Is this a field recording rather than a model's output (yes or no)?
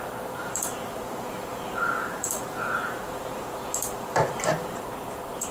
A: no